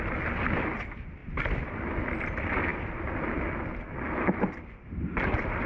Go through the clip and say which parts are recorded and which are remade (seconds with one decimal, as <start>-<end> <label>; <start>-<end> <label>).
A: 0.0-5.7 recorded